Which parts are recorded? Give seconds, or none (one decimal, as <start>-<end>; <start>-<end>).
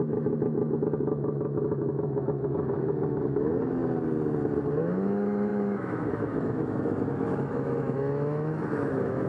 3.8-4.8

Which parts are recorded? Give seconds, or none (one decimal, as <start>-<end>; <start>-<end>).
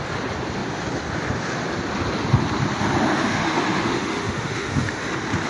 0.0-3.1; 5.1-5.5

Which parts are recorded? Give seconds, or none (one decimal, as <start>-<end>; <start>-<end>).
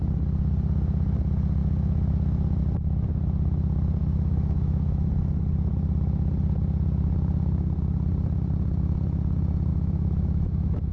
0.0-4.0; 5.1-9.7